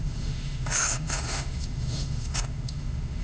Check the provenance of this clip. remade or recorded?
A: remade